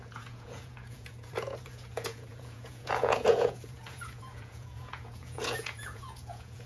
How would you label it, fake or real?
fake